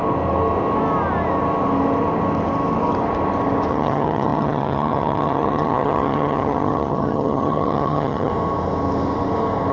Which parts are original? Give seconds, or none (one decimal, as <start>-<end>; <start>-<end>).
0.0-3.7; 8.3-9.7

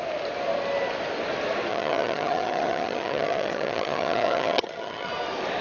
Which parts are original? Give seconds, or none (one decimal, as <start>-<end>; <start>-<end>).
0.0-1.7; 5.1-5.6

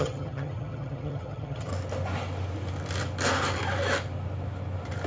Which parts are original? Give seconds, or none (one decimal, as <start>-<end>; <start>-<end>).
1.7-5.1

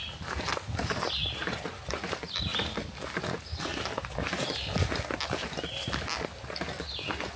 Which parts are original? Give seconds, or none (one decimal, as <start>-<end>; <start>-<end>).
0.0-7.4

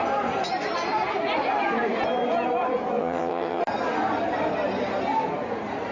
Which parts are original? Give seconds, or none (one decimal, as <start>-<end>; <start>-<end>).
0.0-3.0; 3.6-5.9